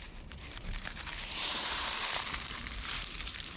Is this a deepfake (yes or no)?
yes